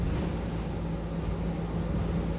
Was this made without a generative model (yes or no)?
yes